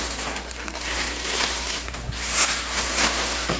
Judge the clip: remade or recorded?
remade